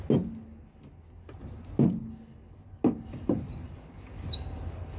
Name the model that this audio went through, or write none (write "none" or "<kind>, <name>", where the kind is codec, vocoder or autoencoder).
none